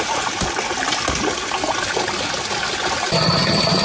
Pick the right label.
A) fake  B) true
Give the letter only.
B